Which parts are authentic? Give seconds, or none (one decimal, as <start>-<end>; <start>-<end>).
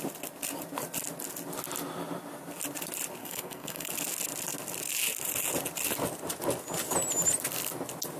0.0-3.2; 3.9-8.2